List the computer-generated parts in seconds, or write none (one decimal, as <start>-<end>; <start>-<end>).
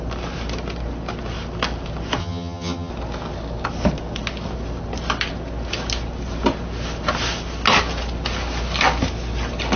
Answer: 2.2-2.9